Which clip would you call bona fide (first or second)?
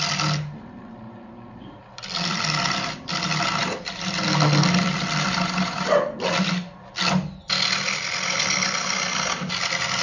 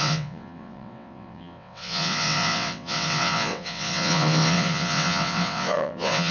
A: first